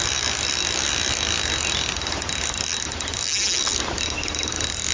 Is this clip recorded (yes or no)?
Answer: yes